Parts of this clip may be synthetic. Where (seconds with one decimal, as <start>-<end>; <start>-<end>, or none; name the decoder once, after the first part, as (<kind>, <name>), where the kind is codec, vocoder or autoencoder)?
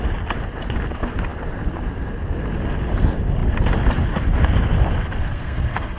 5.2-6.0 (codec, SNAC)